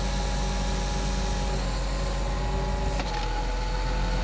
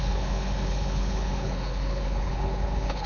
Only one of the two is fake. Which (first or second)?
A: second